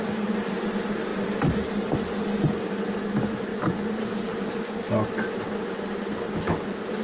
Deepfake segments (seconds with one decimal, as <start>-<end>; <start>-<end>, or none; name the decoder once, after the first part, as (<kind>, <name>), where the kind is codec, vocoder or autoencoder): none